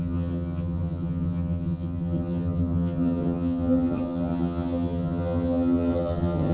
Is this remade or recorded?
remade